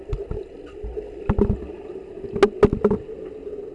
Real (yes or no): yes